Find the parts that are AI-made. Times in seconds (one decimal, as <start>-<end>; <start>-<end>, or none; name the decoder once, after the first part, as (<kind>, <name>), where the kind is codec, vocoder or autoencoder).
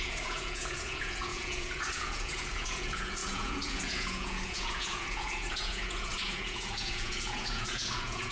0.0-8.3 (vocoder, Vocos)